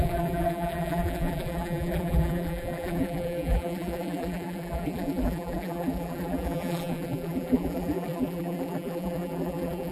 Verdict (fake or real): fake